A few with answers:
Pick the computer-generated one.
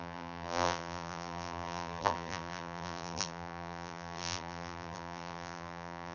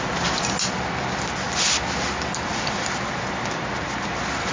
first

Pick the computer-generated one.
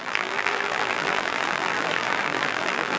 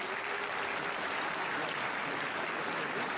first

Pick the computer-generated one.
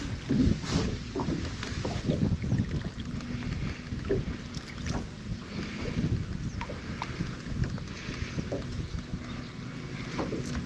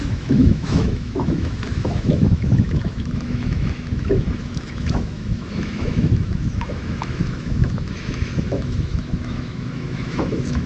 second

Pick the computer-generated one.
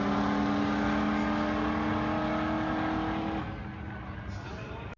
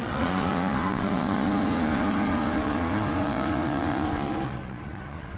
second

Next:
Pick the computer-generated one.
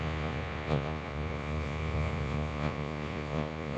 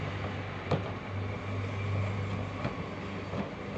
first